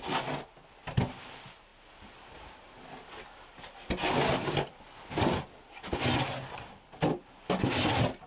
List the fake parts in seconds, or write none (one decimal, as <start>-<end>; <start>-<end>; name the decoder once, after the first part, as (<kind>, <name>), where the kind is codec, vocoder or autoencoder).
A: none